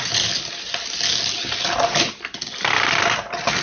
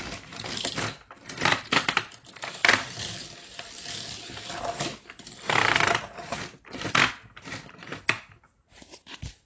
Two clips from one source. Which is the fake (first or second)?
second